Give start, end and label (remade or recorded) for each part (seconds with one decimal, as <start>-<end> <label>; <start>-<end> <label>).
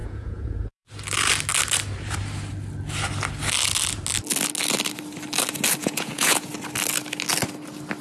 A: 0.0-0.9 remade; 0.9-5.8 recorded; 5.8-6.5 remade; 6.5-8.0 recorded